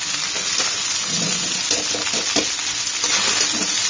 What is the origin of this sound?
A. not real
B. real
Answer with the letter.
B